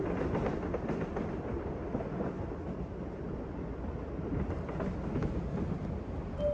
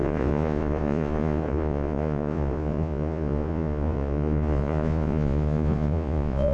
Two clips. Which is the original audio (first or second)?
first